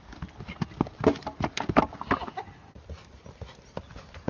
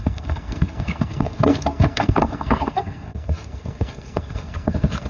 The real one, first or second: first